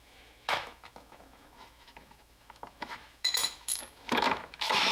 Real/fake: fake